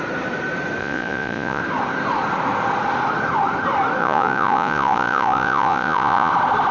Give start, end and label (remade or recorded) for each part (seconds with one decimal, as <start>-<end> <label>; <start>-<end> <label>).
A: 0.0-0.8 recorded; 0.8-1.6 remade; 1.6-4.0 recorded; 4.0-6.3 remade; 6.3-6.7 recorded